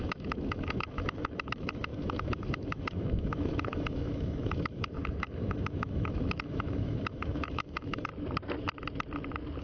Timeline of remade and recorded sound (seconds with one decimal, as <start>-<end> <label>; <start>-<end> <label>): 0.0-8.1 remade; 8.1-9.6 recorded